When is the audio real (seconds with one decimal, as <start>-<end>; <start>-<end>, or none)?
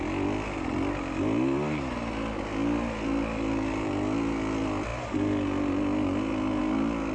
0.0-7.1